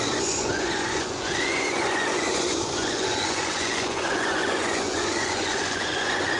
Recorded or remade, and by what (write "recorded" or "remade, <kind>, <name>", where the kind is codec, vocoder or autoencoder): remade, vocoder, Vocos